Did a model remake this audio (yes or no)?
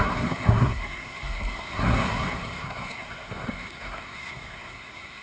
yes